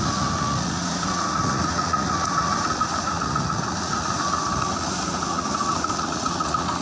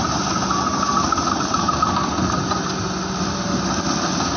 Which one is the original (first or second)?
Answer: second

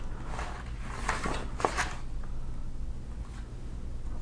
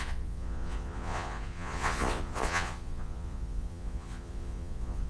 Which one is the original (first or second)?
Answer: first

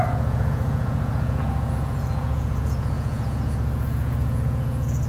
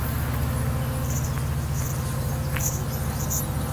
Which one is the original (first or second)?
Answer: second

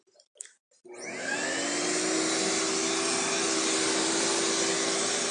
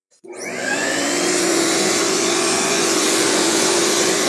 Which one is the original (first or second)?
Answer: first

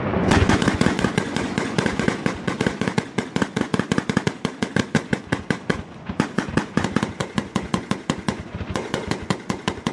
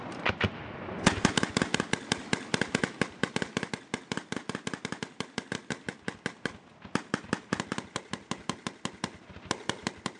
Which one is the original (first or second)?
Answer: second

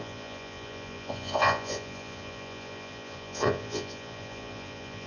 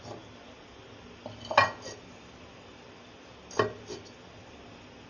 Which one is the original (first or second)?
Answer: second